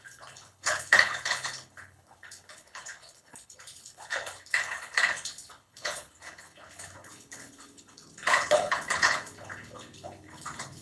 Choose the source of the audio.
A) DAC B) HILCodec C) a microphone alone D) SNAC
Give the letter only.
B